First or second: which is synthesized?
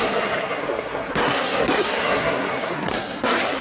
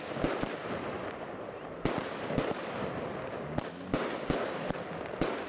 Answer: first